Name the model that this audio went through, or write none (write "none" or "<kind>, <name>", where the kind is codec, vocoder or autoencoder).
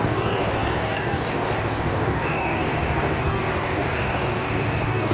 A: codec, DAC